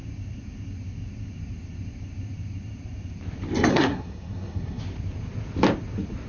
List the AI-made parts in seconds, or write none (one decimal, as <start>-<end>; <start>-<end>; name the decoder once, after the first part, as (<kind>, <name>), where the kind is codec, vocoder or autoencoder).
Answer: 3.7-4.8 (codec, SNAC)

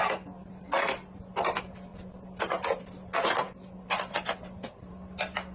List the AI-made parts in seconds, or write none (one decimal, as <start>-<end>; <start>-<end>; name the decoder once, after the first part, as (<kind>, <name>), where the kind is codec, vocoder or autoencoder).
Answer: none

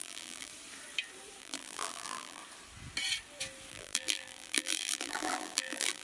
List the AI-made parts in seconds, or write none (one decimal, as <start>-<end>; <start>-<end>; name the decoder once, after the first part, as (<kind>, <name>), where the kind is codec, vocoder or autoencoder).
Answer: 0.0-0.5 (vocoder, BigVGAN v2); 1.4-2.4; 3.7-6.0

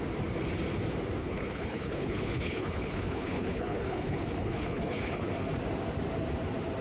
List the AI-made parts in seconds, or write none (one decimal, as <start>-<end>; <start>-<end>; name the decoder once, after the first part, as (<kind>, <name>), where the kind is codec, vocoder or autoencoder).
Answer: 1.2-5.3 (codec, HILCodec)

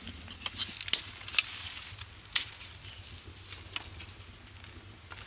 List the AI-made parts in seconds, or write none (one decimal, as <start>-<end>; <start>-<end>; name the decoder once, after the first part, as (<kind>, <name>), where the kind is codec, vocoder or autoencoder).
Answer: none

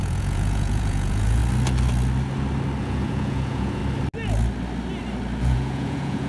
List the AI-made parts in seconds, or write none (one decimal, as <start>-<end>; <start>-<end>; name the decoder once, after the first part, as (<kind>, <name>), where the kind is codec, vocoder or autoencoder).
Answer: 0.0-1.4 (vocoder, Vocos); 2.8-3.8; 5.4-6.3